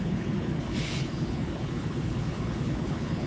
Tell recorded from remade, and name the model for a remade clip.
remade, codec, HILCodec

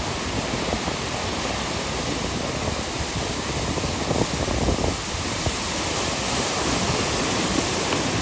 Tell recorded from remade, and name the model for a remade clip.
recorded